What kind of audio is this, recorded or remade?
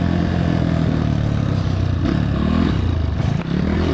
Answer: recorded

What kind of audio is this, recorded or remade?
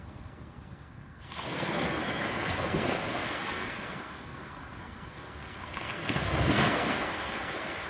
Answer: remade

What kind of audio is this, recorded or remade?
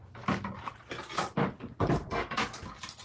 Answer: recorded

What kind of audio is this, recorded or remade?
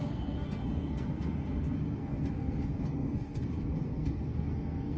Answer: remade